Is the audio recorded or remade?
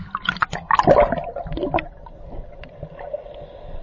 recorded